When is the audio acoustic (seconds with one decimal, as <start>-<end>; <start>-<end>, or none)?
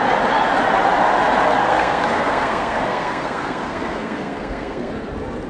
0.0-1.6; 4.9-5.5